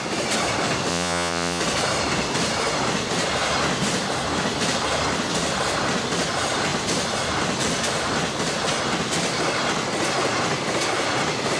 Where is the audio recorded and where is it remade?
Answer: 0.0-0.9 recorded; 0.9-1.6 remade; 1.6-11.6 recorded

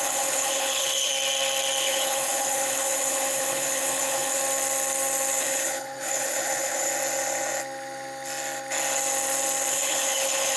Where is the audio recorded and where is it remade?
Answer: 0.0-1.1 remade; 1.1-1.8 recorded; 1.8-4.4 remade; 4.4-5.4 recorded; 5.4-6.9 remade; 6.9-9.7 recorded; 9.7-10.6 remade

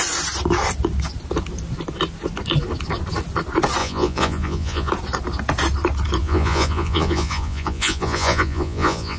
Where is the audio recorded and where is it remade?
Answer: 0.0-3.8 recorded; 3.8-4.9 remade; 4.9-6.2 recorded; 6.2-9.2 remade

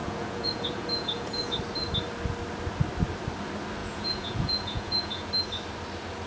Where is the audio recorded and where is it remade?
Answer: 0.0-1.6 remade; 1.6-3.8 recorded; 3.8-5.3 remade; 5.3-6.3 recorded